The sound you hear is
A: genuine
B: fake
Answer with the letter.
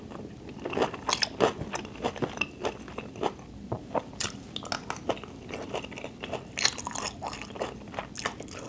A